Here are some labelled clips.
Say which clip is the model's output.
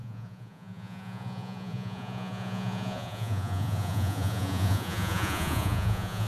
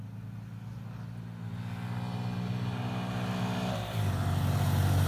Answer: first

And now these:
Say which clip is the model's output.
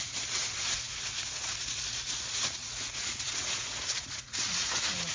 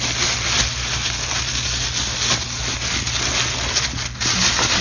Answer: first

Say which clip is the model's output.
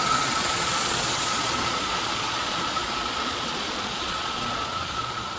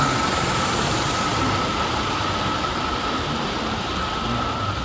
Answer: first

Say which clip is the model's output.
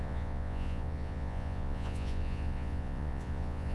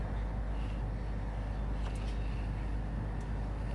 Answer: first